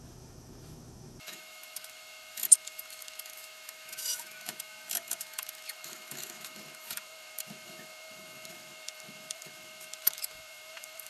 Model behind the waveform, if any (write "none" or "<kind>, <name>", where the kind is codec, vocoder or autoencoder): autoencoder, DAC-VAE